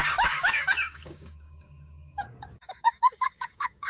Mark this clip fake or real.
fake